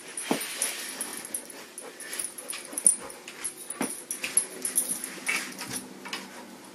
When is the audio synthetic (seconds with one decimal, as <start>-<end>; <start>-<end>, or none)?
none